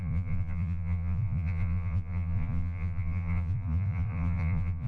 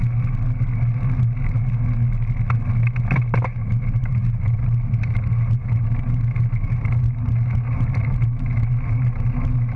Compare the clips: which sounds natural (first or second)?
second